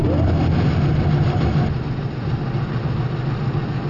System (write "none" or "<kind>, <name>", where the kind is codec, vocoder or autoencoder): none